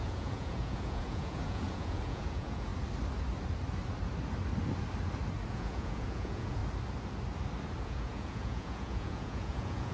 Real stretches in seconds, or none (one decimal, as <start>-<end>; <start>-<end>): 2.7-5.5; 6.6-7.8